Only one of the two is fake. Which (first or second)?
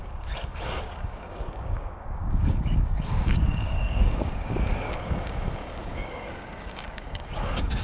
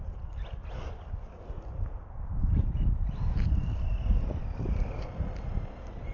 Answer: first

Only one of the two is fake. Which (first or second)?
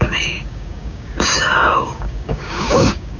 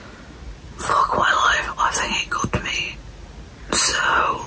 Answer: first